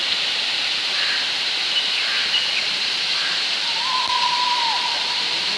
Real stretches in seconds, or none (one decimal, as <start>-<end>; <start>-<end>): 2.1-2.6